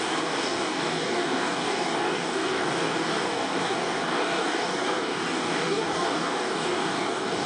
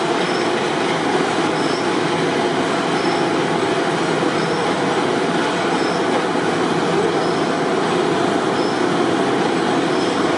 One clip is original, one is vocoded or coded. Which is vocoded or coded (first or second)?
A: first